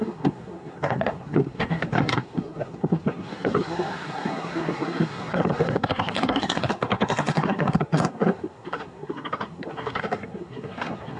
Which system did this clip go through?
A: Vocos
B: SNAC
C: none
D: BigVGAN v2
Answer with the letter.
B